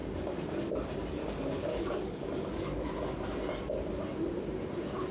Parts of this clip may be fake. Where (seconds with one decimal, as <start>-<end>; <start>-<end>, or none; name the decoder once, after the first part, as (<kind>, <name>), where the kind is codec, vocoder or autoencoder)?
0.0-0.7 (codec, DAC); 1.2-2.9